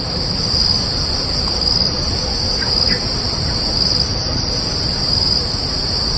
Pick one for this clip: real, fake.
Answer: real